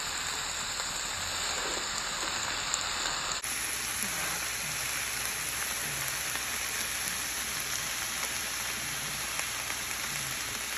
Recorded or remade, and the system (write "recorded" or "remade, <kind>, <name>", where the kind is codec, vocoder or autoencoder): recorded